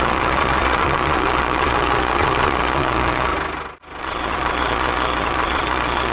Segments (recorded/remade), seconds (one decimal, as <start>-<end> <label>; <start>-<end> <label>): 0.0-3.3 remade; 3.3-4.0 recorded; 4.0-6.1 remade